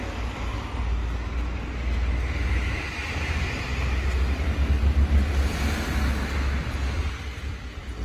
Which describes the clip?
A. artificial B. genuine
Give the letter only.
B